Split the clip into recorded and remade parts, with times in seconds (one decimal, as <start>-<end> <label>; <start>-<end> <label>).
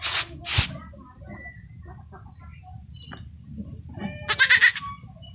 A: 0.0-5.3 recorded